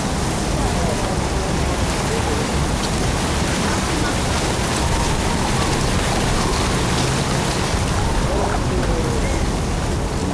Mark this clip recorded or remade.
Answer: recorded